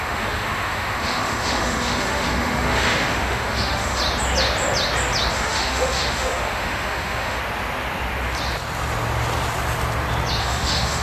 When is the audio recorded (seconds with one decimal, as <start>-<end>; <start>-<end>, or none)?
4.0-5.3; 7.4-10.4